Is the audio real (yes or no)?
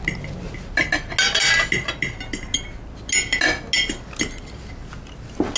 yes